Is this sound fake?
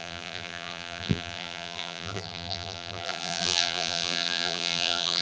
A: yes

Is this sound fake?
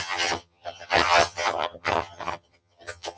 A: yes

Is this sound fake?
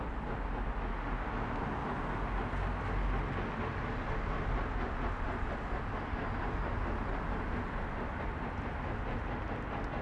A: no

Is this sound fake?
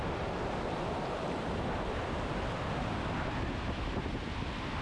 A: no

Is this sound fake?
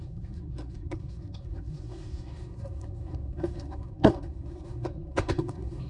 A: yes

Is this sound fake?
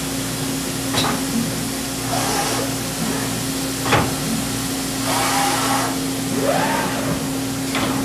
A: no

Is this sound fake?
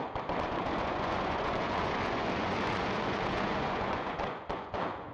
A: yes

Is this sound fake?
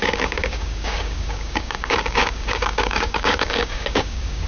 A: yes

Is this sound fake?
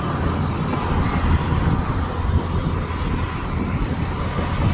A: no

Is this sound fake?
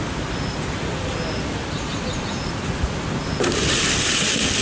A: no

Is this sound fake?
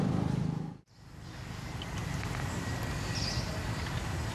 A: no